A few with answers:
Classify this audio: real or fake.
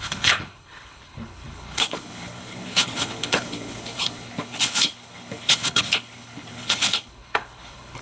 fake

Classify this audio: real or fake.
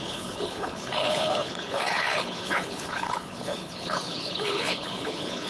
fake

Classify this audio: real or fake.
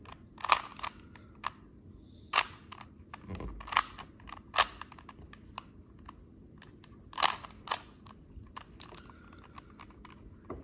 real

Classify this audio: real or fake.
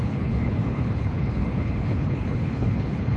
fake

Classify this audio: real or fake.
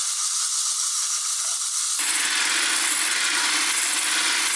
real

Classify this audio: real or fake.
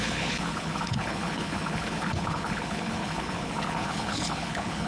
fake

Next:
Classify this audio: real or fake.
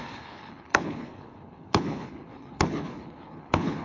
fake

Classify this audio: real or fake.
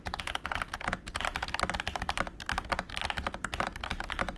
real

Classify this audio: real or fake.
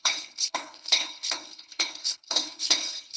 fake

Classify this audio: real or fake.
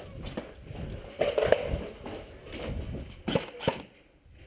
real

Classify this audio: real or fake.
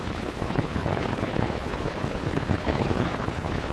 fake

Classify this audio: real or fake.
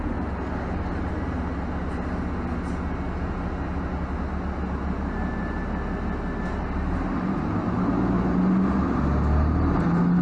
real